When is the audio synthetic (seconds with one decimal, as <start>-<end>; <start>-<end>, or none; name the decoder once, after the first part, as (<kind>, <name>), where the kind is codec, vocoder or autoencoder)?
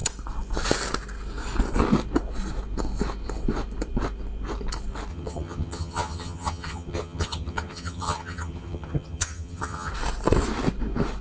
5.1-9.9 (vocoder, HiFi-GAN)